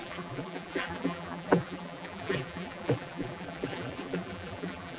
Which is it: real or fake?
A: fake